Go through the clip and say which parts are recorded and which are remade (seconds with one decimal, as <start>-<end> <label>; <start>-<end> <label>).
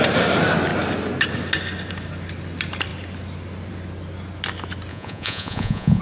0.0-4.9 recorded; 4.9-6.0 remade